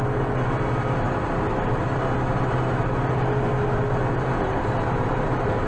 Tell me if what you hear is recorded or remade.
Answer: recorded